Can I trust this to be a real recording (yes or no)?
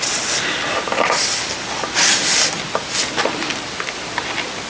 yes